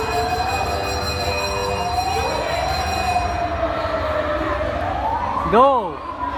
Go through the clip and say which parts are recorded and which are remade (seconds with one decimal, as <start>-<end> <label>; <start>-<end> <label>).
0.0-6.4 recorded